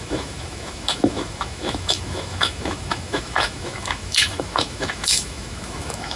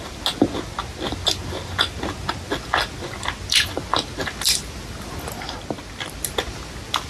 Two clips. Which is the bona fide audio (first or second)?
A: second